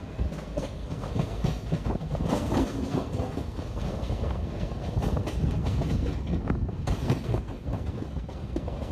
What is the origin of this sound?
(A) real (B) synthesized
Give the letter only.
B